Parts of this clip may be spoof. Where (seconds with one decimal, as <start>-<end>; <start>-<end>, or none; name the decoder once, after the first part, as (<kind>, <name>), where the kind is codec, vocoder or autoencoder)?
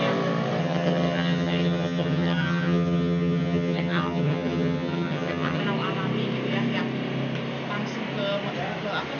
0.6-5.6 (vocoder, HiFi-GAN)